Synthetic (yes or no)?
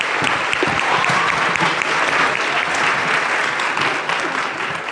no